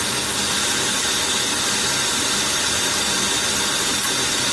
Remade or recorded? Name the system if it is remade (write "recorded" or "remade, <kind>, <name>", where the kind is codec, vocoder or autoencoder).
recorded